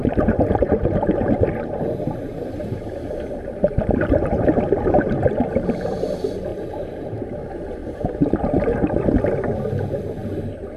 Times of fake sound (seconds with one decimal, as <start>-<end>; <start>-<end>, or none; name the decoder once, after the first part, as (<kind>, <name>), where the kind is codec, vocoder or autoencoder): 0.0-5.2 (vocoder, BigVGAN v2); 6.5-7.2; 7.8-8.4